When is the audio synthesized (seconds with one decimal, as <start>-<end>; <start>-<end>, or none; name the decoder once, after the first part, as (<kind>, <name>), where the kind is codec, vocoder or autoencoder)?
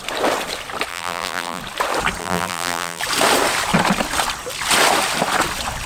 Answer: 0.9-1.6 (vocoder, BigVGAN v2); 2.2-3.0